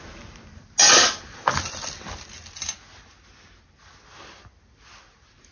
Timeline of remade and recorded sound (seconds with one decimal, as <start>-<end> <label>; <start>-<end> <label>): 0.0-5.5 recorded